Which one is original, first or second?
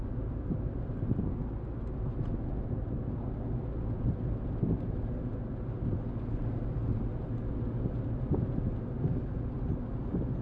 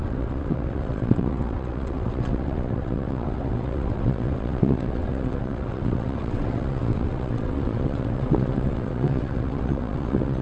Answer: first